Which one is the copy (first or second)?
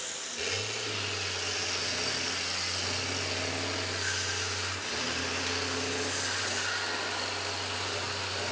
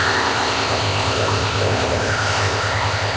second